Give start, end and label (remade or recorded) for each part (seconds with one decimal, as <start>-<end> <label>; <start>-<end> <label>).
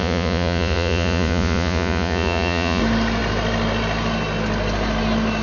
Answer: 0.0-2.8 remade; 2.8-5.4 recorded